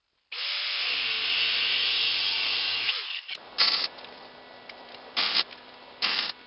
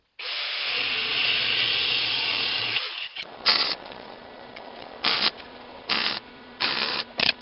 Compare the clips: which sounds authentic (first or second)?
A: first